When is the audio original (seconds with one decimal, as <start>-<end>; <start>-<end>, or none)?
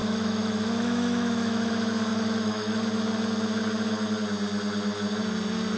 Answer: 1.7-2.1; 2.8-5.8